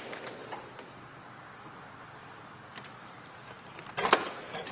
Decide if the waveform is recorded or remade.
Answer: recorded